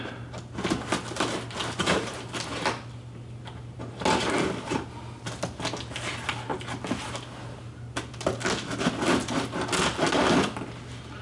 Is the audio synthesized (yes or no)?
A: no